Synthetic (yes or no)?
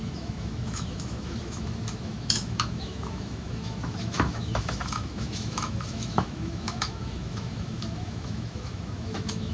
yes